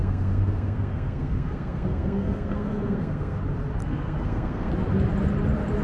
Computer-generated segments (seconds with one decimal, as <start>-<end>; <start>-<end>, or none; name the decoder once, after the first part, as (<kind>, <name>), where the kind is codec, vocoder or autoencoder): 0.0-3.4 (codec, SNAC); 3.8-4.7